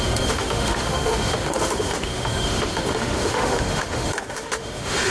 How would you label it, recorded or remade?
remade